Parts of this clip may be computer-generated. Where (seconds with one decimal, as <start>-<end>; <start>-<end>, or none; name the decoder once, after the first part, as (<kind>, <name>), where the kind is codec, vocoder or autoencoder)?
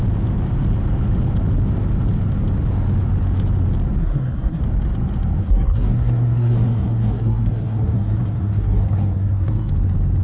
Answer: 4.0-4.6 (codec, SNAC); 5.4-9.7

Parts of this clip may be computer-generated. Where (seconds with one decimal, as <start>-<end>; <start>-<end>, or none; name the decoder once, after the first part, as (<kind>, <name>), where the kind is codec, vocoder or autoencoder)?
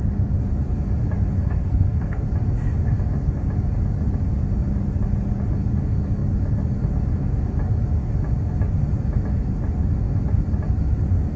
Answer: 1.4-2.2 (codec, SNAC)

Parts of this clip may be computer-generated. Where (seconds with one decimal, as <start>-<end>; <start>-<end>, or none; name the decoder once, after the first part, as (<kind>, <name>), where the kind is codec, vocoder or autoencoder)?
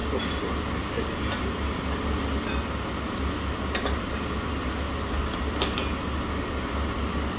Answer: none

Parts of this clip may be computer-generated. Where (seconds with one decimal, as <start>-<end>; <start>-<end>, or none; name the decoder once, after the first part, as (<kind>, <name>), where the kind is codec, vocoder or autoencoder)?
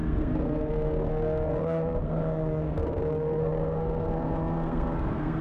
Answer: 0.0-5.4 (codec, SNAC)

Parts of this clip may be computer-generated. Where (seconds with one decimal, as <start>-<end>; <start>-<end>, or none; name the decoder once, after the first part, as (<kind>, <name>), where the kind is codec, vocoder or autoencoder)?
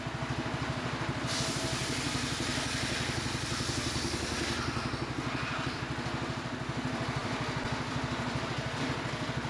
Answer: none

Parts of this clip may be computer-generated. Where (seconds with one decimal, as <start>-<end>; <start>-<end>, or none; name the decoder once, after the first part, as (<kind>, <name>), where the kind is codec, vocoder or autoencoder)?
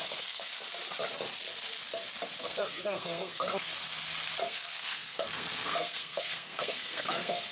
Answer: 0.0-0.5 (codec, SNAC); 2.4-3.7; 4.4-7.5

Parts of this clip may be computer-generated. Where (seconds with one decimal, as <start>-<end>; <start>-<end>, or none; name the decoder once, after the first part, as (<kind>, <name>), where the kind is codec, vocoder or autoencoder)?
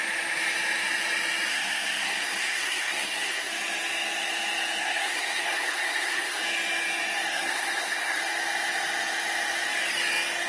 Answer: 1.5-3.5 (codec, SNAC); 4.8-6.4; 7.3-8.2